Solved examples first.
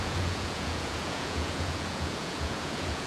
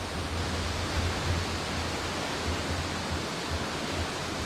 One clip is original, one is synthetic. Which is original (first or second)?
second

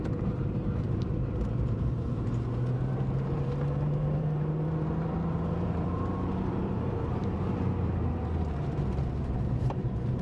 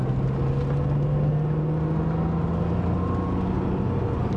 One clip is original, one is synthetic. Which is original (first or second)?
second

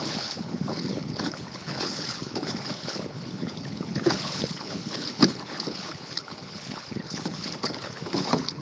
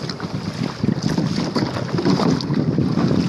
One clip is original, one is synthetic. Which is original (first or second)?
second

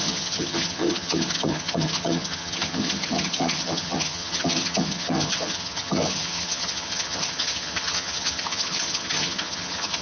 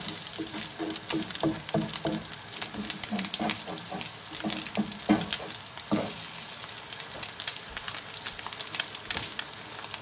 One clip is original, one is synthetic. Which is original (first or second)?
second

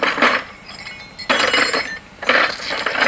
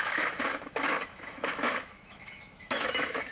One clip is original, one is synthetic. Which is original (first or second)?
first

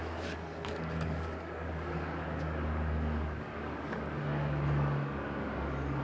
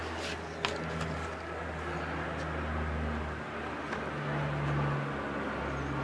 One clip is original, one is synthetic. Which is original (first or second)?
second